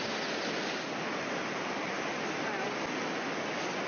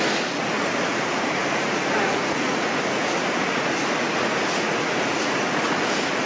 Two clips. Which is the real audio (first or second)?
first